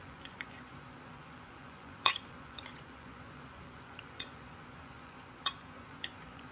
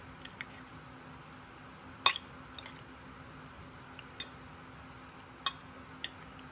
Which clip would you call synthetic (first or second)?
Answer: first